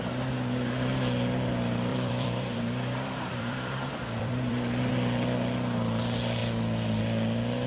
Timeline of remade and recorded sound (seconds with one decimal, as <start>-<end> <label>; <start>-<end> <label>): 0.0-1.9 recorded; 1.9-4.9 remade; 4.9-7.7 recorded